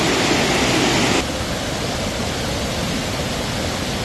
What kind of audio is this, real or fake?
real